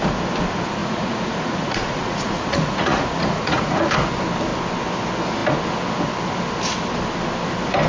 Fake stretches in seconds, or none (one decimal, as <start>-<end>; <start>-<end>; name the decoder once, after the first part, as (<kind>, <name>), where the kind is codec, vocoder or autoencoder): 0.8-3.9 (vocoder, Vocos)